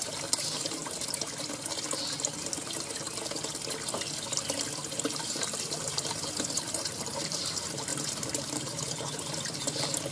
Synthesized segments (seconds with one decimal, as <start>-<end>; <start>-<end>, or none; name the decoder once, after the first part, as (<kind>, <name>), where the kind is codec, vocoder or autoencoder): 0.0-0.8 (vocoder, BigVGAN v2); 4.9-10.1